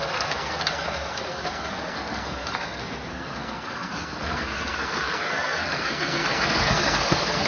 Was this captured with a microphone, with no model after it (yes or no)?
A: no